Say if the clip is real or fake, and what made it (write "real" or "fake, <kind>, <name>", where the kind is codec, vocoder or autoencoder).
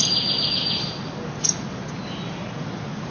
real